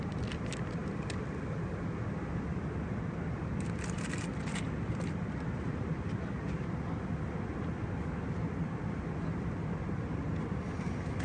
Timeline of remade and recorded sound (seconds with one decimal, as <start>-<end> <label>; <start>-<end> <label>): 0.0-11.2 recorded